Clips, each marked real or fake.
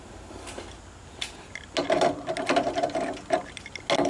real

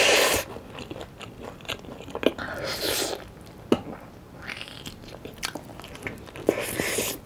real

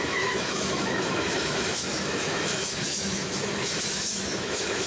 fake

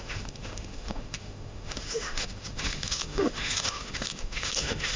fake